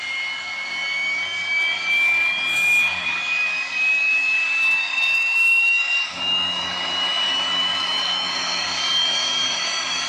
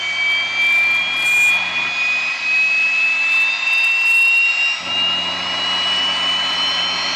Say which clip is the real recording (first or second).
second